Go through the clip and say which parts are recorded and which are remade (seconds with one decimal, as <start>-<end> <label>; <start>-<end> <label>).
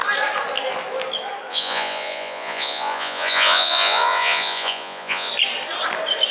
0.0-1.5 recorded; 1.5-5.3 remade; 5.3-6.3 recorded